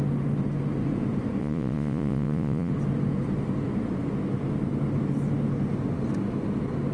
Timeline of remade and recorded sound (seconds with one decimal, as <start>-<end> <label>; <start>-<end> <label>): 0.0-1.4 recorded; 1.4-2.7 remade; 2.7-6.9 recorded